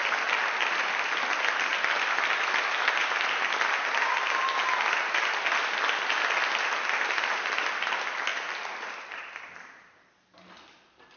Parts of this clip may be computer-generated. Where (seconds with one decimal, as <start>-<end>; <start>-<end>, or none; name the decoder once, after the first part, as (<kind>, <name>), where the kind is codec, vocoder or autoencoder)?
0.7-3.0 (vocoder, BigVGAN v2); 5.6-11.2